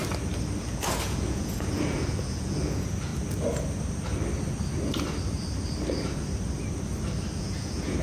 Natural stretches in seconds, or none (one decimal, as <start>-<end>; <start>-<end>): 0.0-0.6; 3.1-7.4